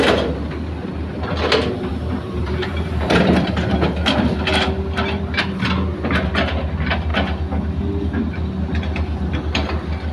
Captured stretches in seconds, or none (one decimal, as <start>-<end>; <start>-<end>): 0.0-1.9; 3.2-10.1